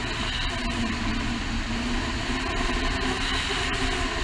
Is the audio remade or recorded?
recorded